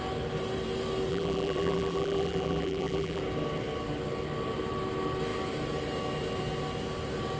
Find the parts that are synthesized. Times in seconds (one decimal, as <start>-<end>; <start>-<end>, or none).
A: 1.1-3.2